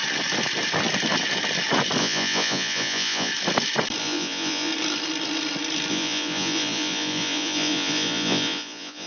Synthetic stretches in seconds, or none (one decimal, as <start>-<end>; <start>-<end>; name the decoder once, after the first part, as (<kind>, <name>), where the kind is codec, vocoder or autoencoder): 2.0-3.3 (vocoder, Vocos); 4.0-4.7; 5.9-9.1